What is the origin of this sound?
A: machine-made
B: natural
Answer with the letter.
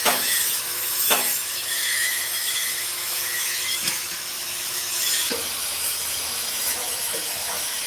A